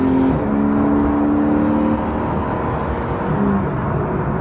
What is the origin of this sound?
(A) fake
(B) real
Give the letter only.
B